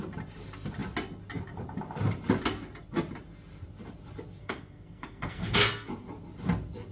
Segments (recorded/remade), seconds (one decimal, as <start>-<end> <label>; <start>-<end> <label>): 0.0-4.4 recorded; 4.4-5.9 remade; 5.9-6.9 recorded